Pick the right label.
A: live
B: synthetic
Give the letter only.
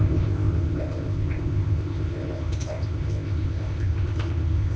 B